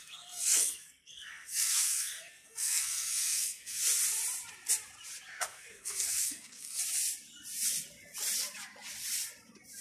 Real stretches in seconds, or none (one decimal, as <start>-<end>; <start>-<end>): 3.8-5.3; 6.8-9.8